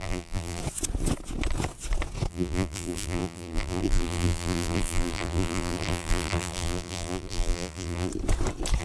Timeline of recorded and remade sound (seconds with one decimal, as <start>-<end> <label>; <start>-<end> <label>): 0.0-0.6 remade; 0.6-2.3 recorded; 2.3-8.1 remade; 8.1-8.8 recorded